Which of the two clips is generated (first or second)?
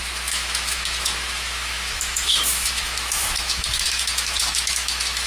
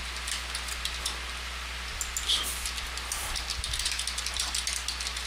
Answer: first